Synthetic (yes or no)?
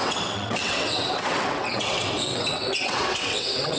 yes